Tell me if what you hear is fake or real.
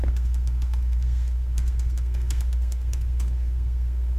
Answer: fake